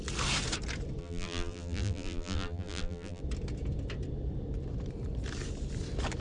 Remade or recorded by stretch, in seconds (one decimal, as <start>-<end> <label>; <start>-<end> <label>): 0.0-1.0 recorded; 1.0-3.2 remade; 3.2-6.2 recorded